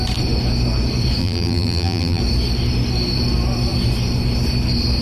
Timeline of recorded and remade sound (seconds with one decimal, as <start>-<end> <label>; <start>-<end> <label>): 0.0-1.2 recorded; 1.2-2.2 remade; 2.2-5.0 recorded